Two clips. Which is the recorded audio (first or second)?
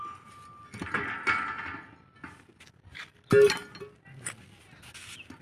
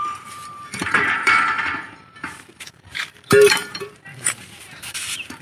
first